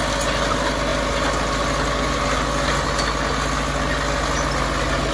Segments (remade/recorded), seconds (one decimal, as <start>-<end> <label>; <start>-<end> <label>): 0.0-5.1 recorded

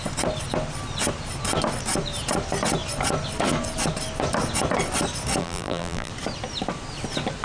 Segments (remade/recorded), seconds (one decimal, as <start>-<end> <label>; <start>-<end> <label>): 0.0-5.4 recorded; 5.4-6.1 remade; 6.1-7.4 recorded

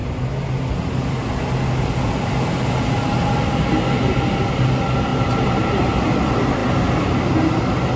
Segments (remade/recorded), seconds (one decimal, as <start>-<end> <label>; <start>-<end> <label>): 0.0-5.1 recorded; 5.1-6.1 remade; 6.1-8.0 recorded

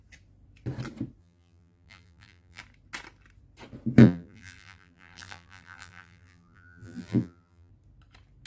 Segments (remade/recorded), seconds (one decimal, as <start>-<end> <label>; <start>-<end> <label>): 0.0-1.2 recorded; 1.2-2.6 remade; 2.6-4.0 recorded; 4.0-7.7 remade; 7.7-8.5 recorded

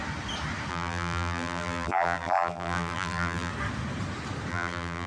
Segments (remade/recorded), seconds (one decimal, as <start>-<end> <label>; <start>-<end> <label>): 0.0-0.7 recorded; 0.7-3.5 remade; 3.5-4.5 recorded; 4.5-5.1 remade

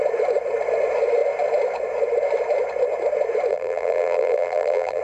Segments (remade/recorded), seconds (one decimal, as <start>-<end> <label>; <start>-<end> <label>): 0.0-3.5 recorded; 3.5-5.0 remade